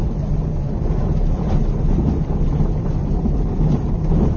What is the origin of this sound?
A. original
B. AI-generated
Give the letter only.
A